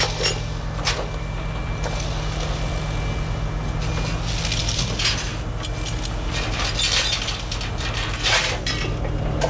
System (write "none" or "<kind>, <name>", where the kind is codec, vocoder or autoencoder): none